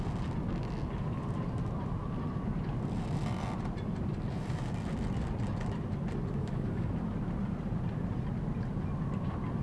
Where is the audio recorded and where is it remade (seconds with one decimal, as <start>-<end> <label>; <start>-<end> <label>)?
0.0-6.4 recorded; 6.4-6.9 remade; 6.9-9.6 recorded